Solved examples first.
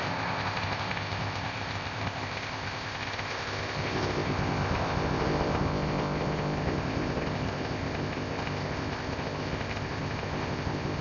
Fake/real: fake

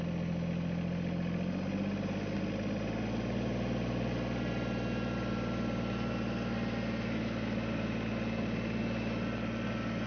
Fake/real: real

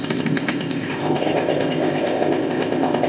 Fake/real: fake